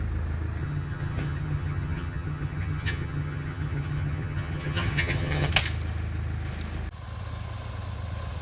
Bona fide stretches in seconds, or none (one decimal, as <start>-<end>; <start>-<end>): 0.0-0.6; 5.5-8.4